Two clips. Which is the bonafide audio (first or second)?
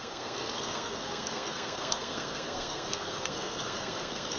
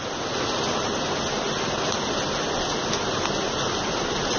second